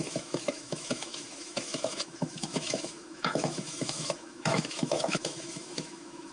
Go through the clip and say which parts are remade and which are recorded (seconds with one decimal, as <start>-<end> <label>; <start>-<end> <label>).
0.0-6.3 remade